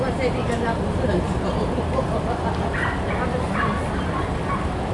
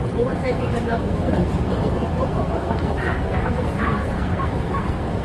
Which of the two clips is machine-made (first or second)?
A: second